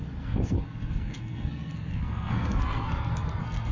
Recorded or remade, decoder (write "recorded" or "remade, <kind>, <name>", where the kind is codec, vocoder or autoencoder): remade, codec, SNAC